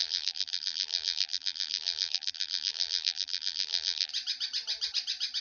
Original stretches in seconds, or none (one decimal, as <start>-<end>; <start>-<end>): 4.1-5.4